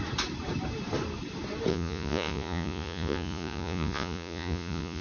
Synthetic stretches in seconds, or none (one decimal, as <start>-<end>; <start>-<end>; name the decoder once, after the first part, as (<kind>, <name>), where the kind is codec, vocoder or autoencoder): 1.7-5.0 (vocoder, Vocos)